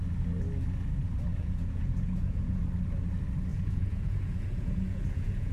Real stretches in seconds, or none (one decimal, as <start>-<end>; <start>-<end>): 0.0-1.3; 2.6-3.5